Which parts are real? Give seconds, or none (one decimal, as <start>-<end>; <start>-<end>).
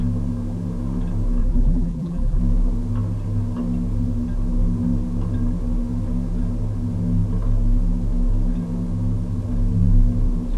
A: 0.0-1.4; 2.4-10.6